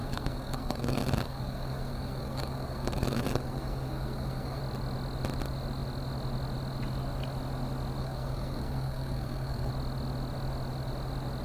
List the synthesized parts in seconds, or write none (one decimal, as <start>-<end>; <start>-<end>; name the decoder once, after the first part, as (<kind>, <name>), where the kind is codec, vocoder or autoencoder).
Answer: 0.0-4.6 (codec, SNAC); 8.0-9.7